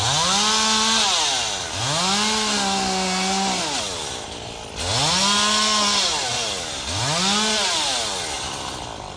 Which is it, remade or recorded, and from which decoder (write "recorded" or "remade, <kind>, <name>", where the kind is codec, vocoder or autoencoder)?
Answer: recorded